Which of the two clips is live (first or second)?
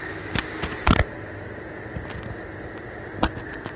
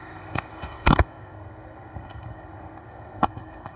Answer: first